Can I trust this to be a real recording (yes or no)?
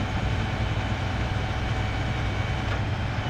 no